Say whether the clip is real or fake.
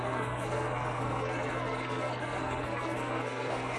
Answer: fake